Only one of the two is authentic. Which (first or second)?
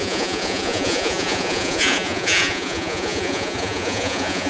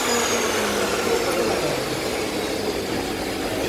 second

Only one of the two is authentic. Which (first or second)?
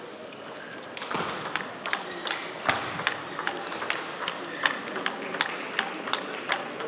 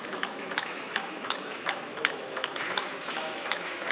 first